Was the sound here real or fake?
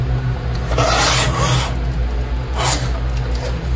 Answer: real